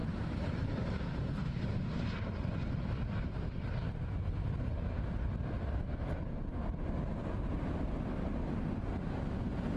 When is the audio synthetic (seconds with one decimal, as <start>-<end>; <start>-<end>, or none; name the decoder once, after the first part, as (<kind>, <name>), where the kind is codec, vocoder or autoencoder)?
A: 0.0-4.0 (vocoder, BigVGAN v2)